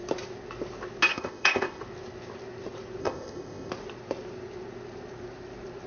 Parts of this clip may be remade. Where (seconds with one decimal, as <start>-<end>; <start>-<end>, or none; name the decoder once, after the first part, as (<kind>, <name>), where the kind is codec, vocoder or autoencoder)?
1.1-1.8 (codec, ZipCodec); 3.0-3.7